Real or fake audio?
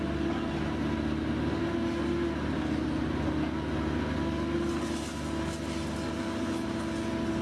real